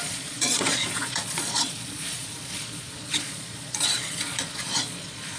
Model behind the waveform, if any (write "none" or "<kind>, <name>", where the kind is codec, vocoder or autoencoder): vocoder, Vocos